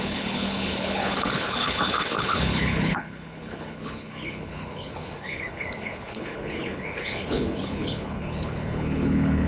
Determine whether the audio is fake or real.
fake